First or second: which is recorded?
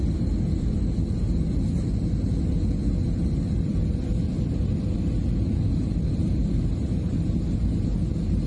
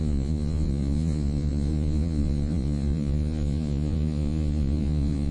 first